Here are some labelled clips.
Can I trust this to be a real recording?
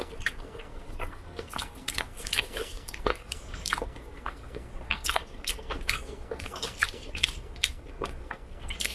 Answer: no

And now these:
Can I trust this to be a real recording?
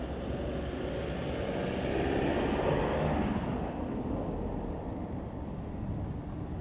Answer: yes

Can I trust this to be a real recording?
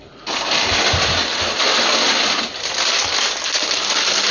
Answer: yes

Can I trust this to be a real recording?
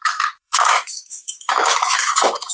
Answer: no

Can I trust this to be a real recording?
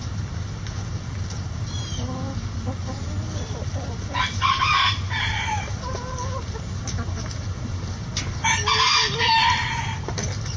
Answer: yes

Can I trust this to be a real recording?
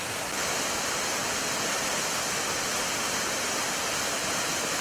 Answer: yes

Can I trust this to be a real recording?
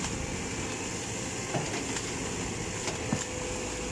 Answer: yes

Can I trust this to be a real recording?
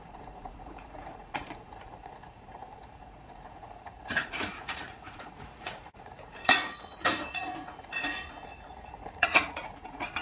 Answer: no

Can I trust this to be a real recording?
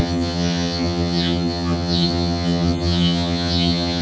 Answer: no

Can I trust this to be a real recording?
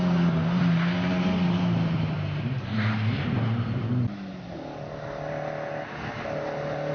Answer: yes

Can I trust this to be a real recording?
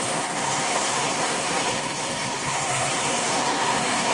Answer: no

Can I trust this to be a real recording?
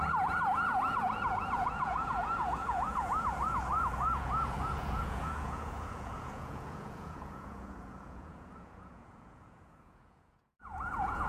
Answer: no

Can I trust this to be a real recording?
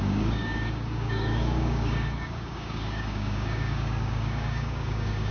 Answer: no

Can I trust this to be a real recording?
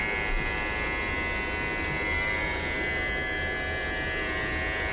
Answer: yes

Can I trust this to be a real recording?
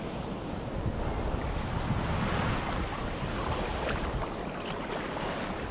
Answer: yes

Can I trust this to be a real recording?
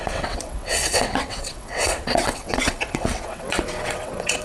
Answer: no